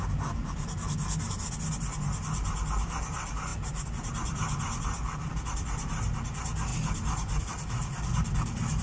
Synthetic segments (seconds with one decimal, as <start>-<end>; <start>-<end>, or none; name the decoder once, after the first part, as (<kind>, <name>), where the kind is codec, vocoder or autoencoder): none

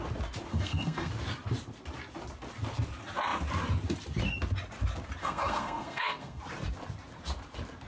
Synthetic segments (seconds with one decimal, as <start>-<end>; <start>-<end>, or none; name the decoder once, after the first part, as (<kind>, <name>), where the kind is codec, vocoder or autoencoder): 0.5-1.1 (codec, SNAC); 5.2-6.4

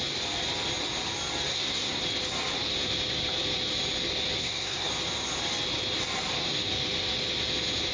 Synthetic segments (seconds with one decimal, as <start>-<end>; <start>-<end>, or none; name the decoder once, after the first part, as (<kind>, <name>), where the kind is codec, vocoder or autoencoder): 1.5-2.0 (codec, SNAC); 4.4-4.9

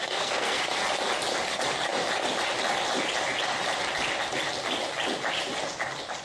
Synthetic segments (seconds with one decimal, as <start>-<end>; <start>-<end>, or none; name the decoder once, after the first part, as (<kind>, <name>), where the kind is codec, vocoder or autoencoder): 0.0-0.6 (codec, SNAC)